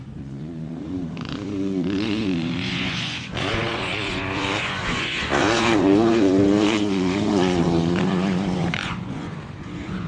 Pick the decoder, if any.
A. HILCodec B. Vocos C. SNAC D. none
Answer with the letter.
B